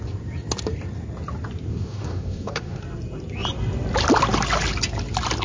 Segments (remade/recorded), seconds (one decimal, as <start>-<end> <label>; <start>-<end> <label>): 0.0-1.7 recorded; 1.7-2.8 remade; 2.8-5.4 recorded